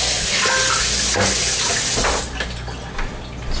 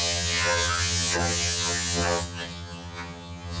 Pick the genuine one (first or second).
first